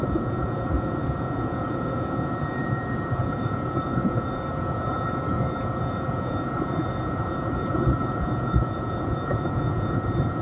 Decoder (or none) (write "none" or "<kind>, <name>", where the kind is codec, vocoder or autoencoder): vocoder, Vocos